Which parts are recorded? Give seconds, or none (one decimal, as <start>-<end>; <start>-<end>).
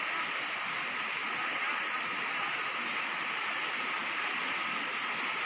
0.0-5.5